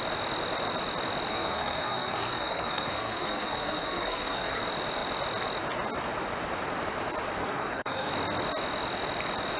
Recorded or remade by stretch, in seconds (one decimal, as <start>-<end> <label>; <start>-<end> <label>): 0.0-1.3 recorded; 1.3-4.6 remade; 4.6-7.4 recorded; 7.4-8.1 remade; 8.1-9.6 recorded